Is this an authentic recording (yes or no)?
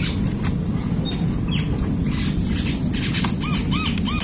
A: yes